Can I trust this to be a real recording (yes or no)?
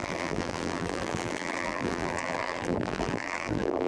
no